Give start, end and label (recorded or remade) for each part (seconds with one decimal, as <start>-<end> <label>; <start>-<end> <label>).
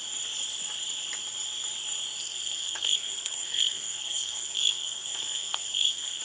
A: 0.0-2.2 recorded; 2.2-6.2 remade